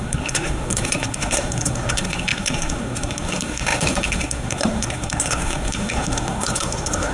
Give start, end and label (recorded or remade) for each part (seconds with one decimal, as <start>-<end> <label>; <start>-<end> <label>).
0.0-7.1 remade